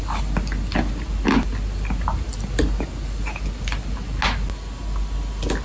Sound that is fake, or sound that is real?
real